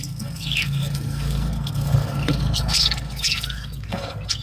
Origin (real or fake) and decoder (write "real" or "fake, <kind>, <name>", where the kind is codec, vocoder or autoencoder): fake, codec, SNAC